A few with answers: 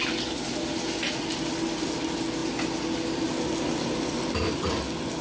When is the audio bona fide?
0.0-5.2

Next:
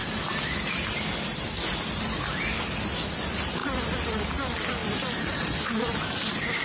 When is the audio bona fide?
2.6-3.6; 4.3-6.6